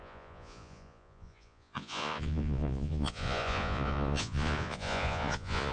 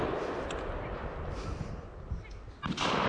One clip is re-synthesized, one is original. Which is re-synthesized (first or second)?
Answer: first